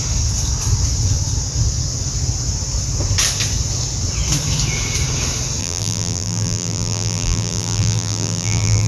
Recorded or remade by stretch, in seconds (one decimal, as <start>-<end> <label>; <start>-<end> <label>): 0.0-5.6 recorded; 5.6-8.9 remade